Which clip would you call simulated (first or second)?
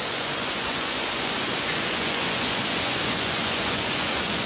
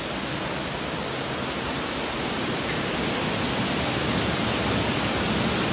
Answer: first